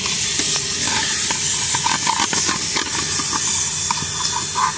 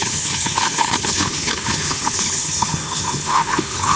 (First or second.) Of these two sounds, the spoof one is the second